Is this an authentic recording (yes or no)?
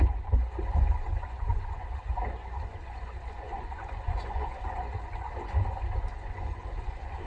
no